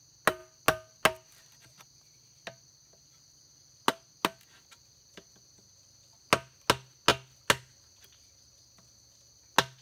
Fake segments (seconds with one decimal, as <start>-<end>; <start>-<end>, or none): none